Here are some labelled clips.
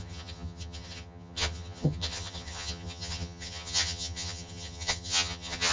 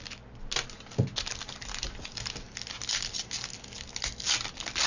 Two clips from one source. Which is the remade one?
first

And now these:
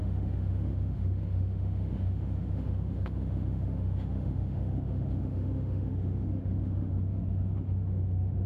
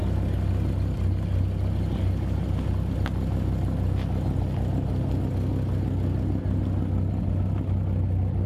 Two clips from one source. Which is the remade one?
first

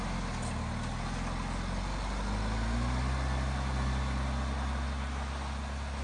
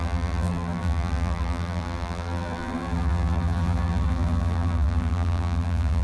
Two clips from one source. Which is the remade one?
second